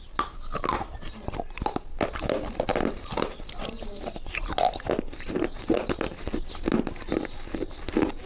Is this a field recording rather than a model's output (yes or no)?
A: yes